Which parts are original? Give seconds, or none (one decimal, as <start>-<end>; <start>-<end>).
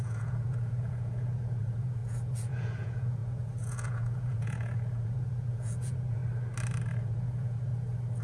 6.2-7.0; 7.7-8.2